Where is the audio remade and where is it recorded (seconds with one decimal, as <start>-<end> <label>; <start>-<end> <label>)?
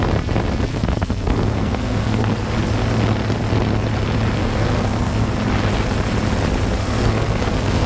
0.0-0.7 recorded; 0.7-2.4 remade; 2.4-4.4 recorded; 4.4-5.3 remade; 5.3-6.8 recorded; 6.8-7.9 remade